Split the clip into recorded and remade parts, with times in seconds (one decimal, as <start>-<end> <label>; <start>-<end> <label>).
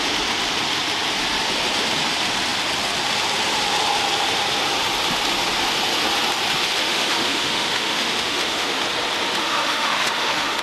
0.0-6.8 recorded; 6.8-8.8 remade; 8.8-9.4 recorded; 9.4-10.6 remade